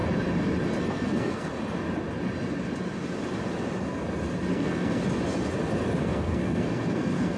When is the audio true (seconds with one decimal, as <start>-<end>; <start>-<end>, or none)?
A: 0.0-0.8; 1.5-4.5; 5.0-6.0